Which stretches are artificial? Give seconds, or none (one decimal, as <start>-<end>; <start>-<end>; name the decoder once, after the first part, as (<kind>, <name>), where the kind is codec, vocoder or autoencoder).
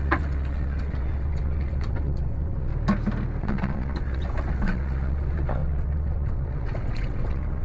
0.0-2.7 (vocoder, WaveNeXt); 3.4-7.6